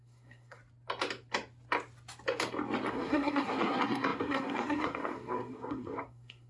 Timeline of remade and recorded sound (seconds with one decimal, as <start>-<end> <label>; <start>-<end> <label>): 0.0-0.6 remade; 0.6-2.9 recorded; 2.9-6.5 remade